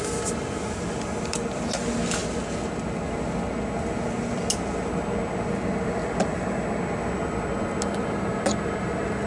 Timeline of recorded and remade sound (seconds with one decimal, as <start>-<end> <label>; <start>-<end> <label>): 0.0-9.3 recorded